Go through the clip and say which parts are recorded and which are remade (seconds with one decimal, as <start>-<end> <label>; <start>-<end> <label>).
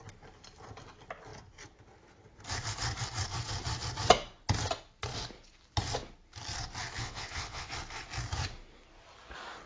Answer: 0.0-7.0 recorded; 7.0-7.7 remade; 7.7-9.7 recorded